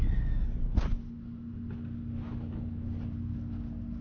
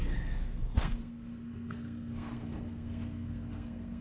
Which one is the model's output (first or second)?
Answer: second